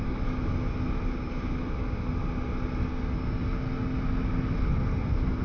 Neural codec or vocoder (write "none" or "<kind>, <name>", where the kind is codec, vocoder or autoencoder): none